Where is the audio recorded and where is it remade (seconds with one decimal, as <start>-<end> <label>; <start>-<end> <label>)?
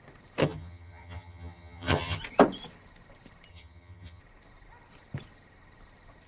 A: 0.0-0.4 recorded; 0.4-2.2 remade; 2.2-3.5 recorded; 3.5-4.2 remade; 4.2-6.3 recorded